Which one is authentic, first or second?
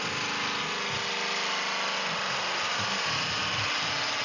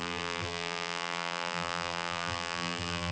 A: first